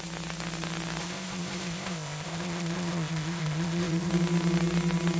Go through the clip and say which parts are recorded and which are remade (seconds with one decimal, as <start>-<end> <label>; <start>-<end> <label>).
0.0-1.0 recorded; 1.0-4.1 remade; 4.1-5.2 recorded